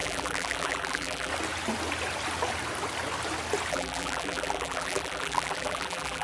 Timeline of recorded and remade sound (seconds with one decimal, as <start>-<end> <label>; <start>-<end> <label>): 0.0-1.3 remade; 1.3-3.7 recorded; 3.7-6.2 remade